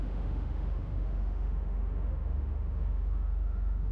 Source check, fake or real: fake